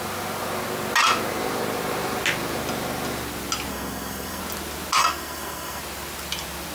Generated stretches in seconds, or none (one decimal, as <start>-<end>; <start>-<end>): 3.7-4.4; 5.0-5.8